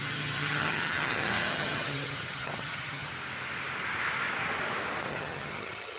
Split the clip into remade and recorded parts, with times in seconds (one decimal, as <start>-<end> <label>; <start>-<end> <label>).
0.0-3.1 remade; 3.1-5.1 recorded; 5.1-6.0 remade